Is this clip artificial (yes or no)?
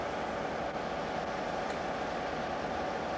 no